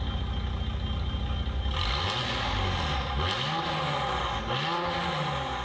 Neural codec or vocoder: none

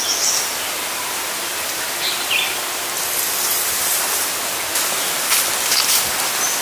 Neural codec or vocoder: none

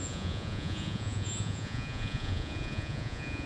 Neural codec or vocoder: vocoder, Vocos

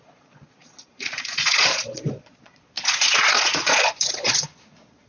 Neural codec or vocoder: vocoder, Vocos